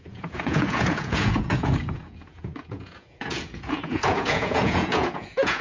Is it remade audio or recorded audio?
remade